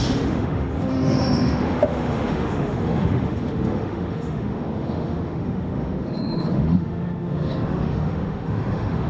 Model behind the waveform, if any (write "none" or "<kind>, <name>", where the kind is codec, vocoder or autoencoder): autoencoder, DAC-VAE